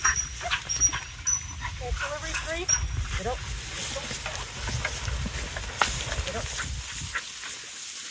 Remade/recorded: recorded